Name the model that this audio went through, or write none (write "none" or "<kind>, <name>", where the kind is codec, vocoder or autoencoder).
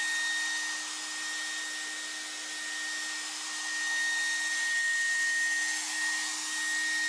none